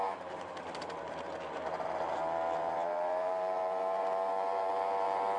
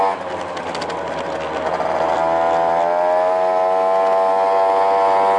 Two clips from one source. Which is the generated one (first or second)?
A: first